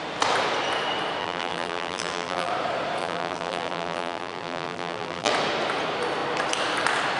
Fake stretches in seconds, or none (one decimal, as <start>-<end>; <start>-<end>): 1.2-2.5; 3.0-5.3